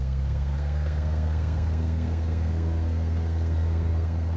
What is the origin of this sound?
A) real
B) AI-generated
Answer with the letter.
B